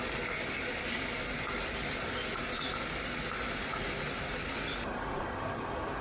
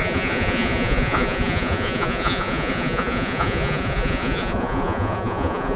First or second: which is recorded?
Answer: first